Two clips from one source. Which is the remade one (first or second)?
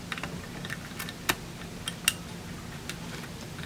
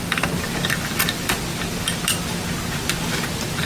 second